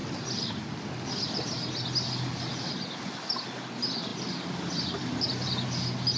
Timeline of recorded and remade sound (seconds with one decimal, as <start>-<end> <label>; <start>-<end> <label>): 0.0-6.2 recorded